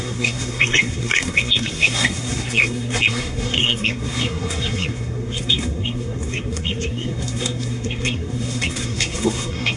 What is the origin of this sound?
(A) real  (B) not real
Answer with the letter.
B